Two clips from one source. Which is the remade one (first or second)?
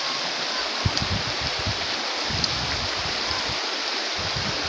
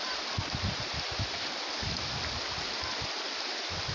second